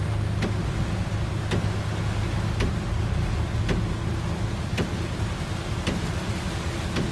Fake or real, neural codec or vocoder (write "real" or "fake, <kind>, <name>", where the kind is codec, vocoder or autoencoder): real